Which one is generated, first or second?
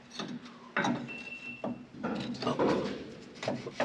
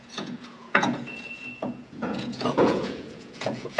second